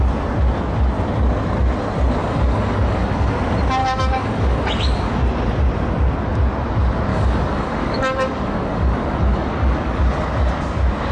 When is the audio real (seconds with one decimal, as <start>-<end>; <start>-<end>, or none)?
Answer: 0.0-2.2; 3.3-3.8; 5.2-7.1; 10.0-11.1